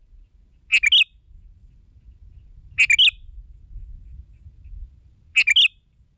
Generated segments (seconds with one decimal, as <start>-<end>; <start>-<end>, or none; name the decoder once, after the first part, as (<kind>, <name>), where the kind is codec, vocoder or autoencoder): none